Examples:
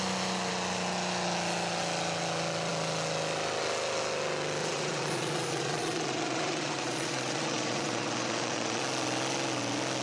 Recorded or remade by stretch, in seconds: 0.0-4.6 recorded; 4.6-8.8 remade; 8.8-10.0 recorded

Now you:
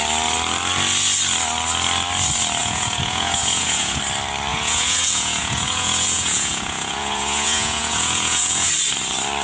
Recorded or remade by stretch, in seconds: 0.0-2.6 recorded; 2.6-4.0 remade; 4.0-4.5 recorded; 4.5-8.7 remade; 8.7-9.4 recorded

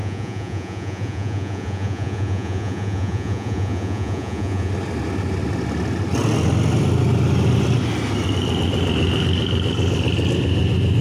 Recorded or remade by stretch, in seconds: 0.0-4.7 remade; 4.7-11.0 recorded

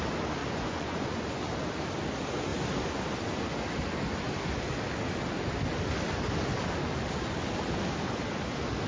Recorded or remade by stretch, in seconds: 0.0-0.4 recorded; 0.4-1.5 remade; 1.5-8.9 recorded

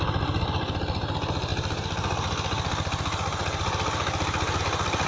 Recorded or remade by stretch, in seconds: 0.0-5.1 recorded

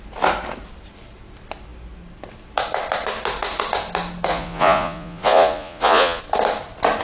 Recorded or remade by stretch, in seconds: 0.0-4.3 recorded; 4.3-6.2 remade; 6.2-7.0 recorded

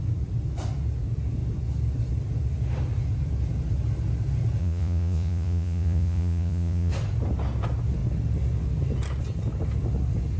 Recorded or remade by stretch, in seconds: 0.0-4.6 recorded; 4.6-6.9 remade; 6.9-10.4 recorded

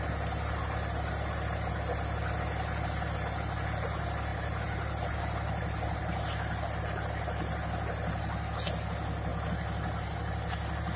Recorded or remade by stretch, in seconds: 0.0-11.0 recorded